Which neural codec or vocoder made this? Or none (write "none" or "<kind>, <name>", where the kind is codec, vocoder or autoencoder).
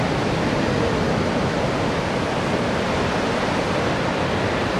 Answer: none